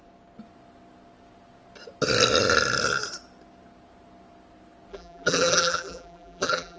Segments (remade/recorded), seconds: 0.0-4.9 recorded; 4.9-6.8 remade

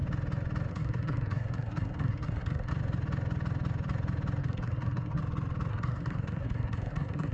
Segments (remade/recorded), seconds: 0.0-0.7 recorded; 0.7-2.7 remade; 2.7-4.4 recorded; 4.4-5.2 remade; 5.2-5.7 recorded; 5.7-7.3 remade

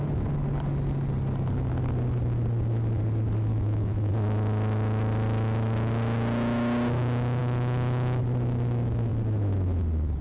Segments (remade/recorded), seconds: 0.0-3.5 recorded; 3.5-4.1 remade; 4.1-7.4 recorded; 7.4-8.2 remade; 8.2-10.2 recorded